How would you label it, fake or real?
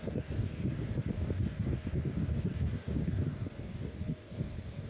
fake